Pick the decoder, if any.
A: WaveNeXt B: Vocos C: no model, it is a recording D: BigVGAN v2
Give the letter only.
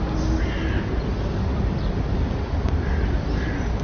C